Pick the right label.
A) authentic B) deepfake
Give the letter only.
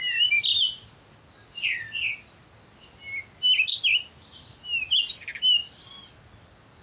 A